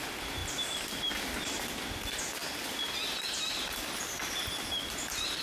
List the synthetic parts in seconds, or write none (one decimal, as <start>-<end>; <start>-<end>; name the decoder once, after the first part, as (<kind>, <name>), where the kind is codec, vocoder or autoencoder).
none